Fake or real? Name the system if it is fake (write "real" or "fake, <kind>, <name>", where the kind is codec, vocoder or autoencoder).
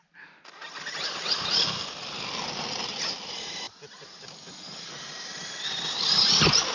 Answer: real